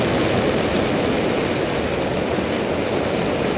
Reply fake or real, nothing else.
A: real